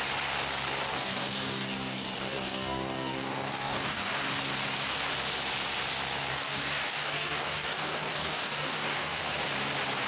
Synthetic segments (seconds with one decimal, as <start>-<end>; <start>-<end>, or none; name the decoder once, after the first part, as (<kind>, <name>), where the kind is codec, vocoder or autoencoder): 0.9-4.1 (codec, DAC); 6.3-9.2